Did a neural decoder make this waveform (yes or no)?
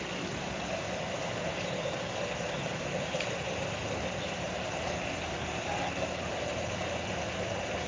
no